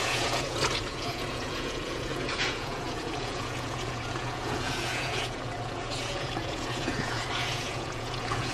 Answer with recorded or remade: remade